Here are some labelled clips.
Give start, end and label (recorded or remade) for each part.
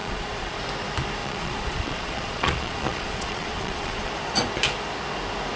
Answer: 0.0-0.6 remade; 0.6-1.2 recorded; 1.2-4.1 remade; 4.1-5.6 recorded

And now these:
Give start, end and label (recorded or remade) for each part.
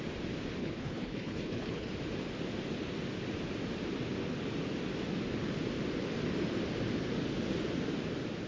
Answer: 0.0-0.6 recorded; 0.6-1.9 remade; 1.9-8.5 recorded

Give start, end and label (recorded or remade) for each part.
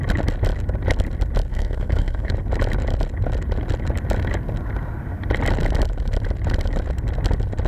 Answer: 0.0-1.5 recorded; 1.5-2.3 remade; 2.3-7.7 recorded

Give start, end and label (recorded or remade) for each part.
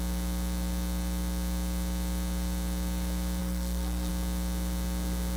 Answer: 0.0-3.4 recorded; 3.4-4.1 remade; 4.1-5.4 recorded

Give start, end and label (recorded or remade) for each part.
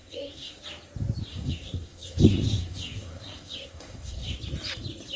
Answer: 0.0-0.6 remade; 0.6-1.3 recorded; 1.3-4.4 remade; 4.4-5.2 recorded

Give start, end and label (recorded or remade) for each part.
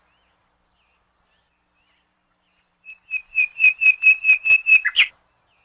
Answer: 0.0-0.4 recorded; 0.4-3.8 remade; 3.8-5.6 recorded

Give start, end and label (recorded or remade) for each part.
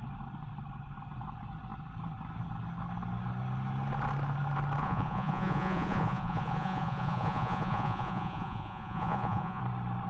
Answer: 0.0-4.8 recorded; 4.8-9.6 remade; 9.6-10.1 recorded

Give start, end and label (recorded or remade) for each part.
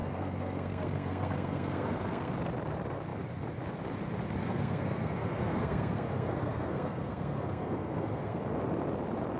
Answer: 0.0-2.3 remade; 2.3-4.4 recorded; 4.4-8.4 remade; 8.4-9.4 recorded